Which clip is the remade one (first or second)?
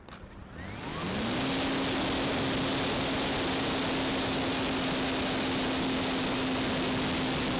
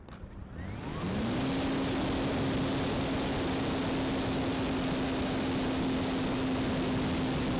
second